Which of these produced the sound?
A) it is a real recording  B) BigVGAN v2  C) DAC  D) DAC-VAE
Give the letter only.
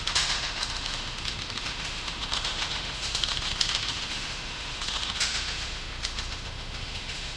D